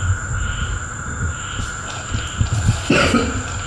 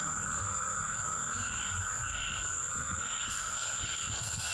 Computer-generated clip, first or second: second